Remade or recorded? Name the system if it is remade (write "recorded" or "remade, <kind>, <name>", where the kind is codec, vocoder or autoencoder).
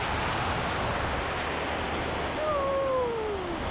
recorded